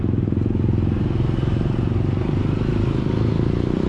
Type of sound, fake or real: real